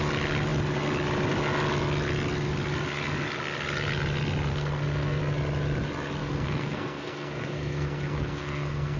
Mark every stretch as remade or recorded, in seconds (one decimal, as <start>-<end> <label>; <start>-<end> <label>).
0.0-4.5 recorded; 4.5-5.2 remade; 5.2-6.2 recorded; 6.2-9.0 remade